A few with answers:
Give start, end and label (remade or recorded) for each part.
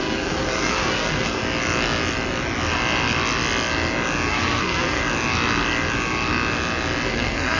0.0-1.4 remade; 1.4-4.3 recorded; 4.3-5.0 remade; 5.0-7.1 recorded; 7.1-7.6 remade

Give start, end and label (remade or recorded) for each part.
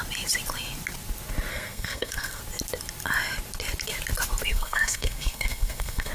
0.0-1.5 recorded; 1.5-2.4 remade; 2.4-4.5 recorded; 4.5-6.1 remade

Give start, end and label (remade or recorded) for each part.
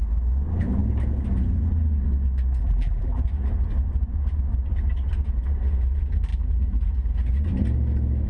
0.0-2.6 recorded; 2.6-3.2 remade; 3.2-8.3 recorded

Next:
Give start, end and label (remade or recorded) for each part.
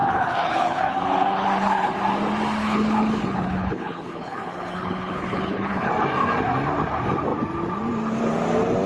0.0-1.9 remade; 1.9-2.6 recorded; 2.6-5.9 remade; 5.9-8.9 recorded